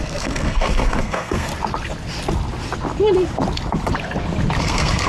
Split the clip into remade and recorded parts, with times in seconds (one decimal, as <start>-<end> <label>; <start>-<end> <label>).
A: 0.0-1.5 remade; 1.5-4.6 recorded; 4.6-5.1 remade